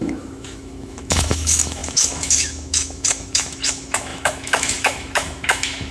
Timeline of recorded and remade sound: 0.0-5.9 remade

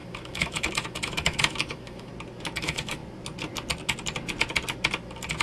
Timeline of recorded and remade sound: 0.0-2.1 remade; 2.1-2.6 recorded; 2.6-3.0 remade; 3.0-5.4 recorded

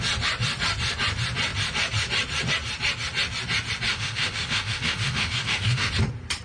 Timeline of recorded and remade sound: 0.0-3.9 recorded; 3.9-5.9 remade; 5.9-6.4 recorded

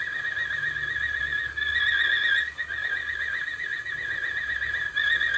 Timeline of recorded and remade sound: 0.0-5.4 recorded